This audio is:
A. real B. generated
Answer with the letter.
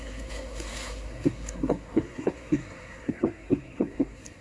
B